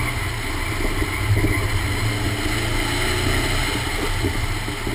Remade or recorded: recorded